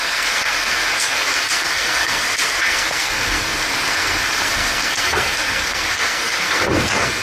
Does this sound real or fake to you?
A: fake